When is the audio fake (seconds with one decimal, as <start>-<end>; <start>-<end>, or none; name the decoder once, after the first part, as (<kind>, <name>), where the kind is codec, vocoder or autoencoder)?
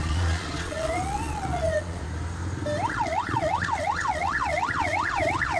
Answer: 0.0-2.0 (vocoder, Vocos); 2.9-5.6